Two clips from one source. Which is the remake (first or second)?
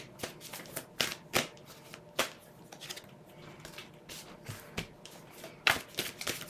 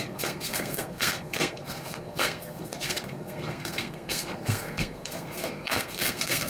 second